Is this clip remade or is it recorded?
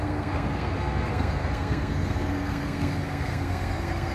remade